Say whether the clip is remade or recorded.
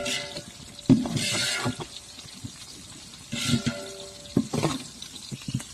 recorded